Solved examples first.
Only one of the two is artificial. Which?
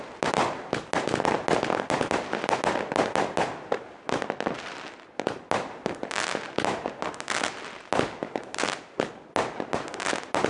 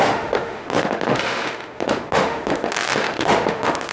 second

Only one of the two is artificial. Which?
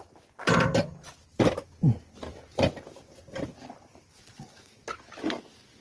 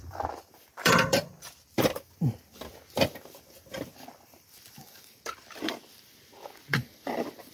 second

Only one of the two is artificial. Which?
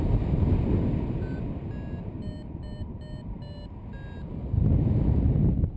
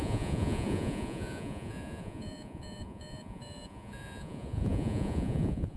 second